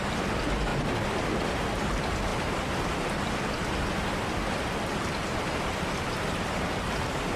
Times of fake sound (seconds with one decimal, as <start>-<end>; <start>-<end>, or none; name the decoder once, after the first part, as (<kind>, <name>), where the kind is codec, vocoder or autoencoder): none